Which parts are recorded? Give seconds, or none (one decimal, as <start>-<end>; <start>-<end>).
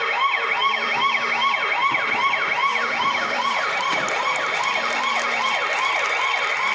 0.0-2.7; 5.5-6.7